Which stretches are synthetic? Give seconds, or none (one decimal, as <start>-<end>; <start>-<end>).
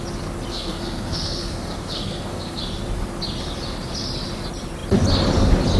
0.5-2.6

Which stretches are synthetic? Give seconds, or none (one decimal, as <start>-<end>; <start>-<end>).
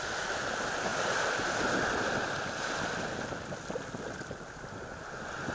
none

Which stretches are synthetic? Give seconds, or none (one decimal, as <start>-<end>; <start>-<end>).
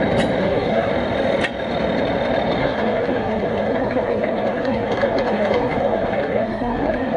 0.4-0.9; 2.6-7.2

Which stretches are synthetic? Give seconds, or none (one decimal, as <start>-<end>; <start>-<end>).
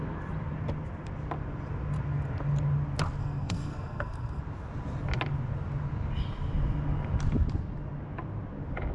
3.2-4.4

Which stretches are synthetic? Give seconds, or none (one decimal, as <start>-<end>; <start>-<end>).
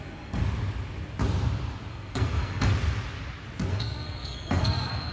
0.0-0.4; 1.9-2.7; 3.7-5.1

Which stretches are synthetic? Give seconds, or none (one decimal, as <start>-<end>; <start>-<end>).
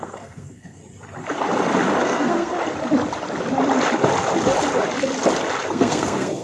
0.0-0.8; 2.0-2.5; 5.7-6.4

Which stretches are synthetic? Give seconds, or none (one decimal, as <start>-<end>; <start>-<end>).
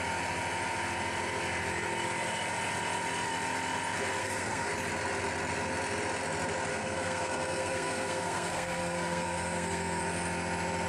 4.2-4.7; 6.7-10.0